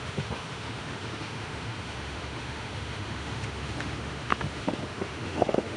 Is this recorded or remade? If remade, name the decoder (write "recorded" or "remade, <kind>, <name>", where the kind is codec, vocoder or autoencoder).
remade, autoencoder, DAC-VAE